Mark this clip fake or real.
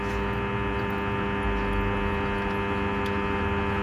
real